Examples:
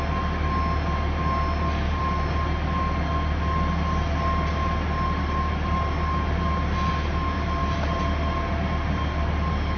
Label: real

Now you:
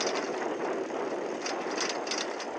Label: real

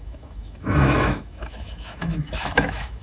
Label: fake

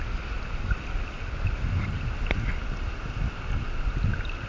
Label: real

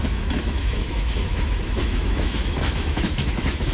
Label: fake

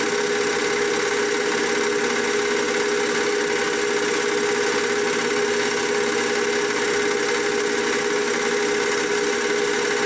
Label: real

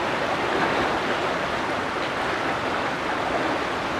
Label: real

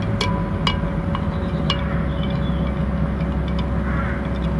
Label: real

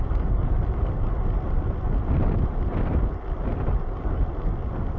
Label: real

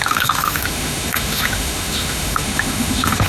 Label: fake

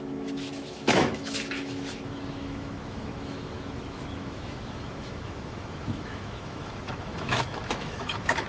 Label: fake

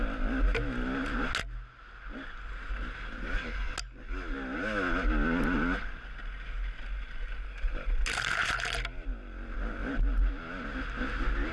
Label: real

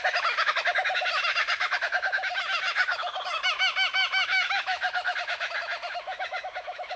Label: fake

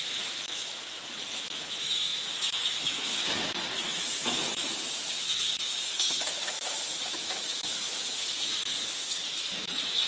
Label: fake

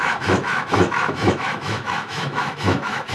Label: fake